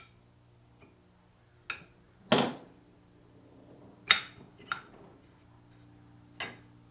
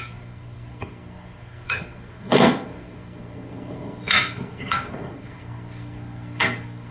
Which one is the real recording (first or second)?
first